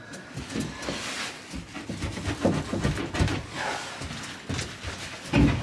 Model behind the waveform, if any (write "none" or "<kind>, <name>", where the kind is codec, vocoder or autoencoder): none